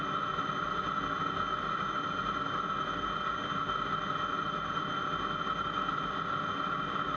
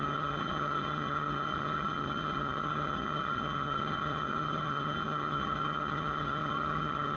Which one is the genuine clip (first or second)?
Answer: first